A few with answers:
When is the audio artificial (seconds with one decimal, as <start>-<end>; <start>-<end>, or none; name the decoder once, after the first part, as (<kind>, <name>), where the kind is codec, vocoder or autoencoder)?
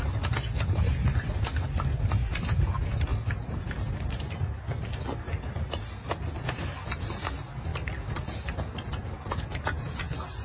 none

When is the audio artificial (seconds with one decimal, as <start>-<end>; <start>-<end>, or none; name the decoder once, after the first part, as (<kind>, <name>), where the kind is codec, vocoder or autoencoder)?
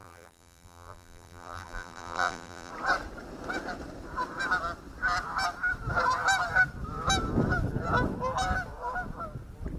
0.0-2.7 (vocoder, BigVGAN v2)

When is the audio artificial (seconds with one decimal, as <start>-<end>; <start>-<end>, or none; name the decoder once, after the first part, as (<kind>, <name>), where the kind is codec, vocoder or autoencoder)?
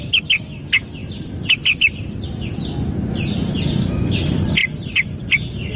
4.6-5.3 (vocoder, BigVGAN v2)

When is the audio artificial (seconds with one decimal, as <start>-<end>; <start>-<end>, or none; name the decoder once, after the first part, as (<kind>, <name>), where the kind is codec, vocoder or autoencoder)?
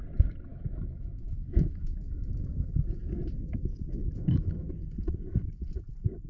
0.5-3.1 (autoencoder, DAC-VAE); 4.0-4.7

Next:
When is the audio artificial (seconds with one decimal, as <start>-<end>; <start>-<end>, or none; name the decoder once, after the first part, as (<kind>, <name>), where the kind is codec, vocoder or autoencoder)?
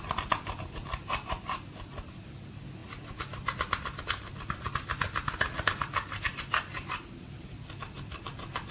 none